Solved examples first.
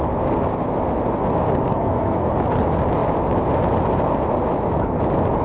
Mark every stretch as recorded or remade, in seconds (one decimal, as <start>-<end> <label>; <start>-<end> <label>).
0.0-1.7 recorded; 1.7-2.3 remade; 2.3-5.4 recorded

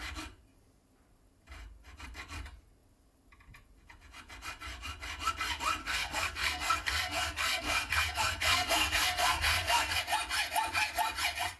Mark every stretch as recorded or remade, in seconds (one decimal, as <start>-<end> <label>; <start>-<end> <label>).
0.0-5.8 recorded; 5.8-10.0 remade; 10.0-11.6 recorded

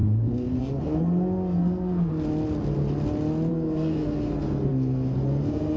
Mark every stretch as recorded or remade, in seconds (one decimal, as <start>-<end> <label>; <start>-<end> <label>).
0.0-2.1 remade; 2.1-3.5 recorded; 3.5-5.8 remade